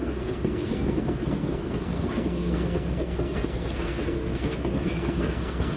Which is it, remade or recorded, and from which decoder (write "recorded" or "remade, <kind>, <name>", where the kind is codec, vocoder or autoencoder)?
remade, codec, SNAC